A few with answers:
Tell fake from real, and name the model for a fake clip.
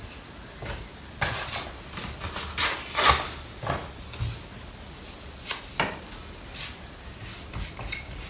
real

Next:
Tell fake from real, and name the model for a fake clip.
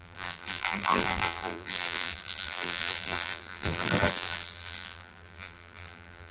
fake, vocoder, BigVGAN v2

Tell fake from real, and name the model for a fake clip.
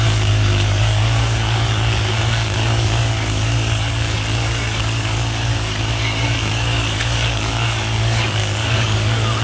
fake, codec, DAC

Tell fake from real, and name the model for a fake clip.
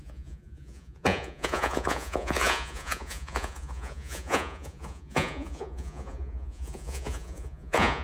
fake, vocoder, Vocos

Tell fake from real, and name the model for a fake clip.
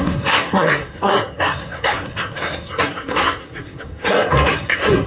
fake, codec, SNAC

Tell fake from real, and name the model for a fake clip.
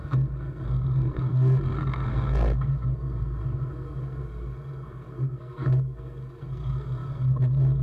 fake, codec, SNAC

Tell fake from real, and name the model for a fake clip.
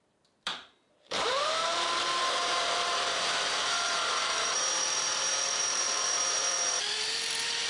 fake, vocoder, BigVGAN v2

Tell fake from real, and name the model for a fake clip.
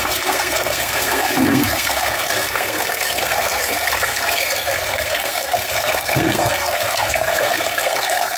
fake, codec, SNAC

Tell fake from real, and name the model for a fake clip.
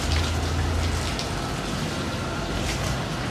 real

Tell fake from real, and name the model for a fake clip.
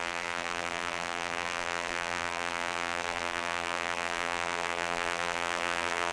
fake, vocoder, BigVGAN v2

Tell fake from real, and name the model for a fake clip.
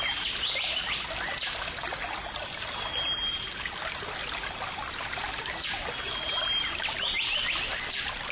real